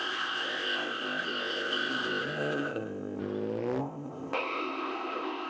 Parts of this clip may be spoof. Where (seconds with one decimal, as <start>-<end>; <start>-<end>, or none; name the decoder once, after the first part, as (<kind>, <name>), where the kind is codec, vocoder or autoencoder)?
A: 0.0-3.2 (codec, ZipCodec); 3.8-5.5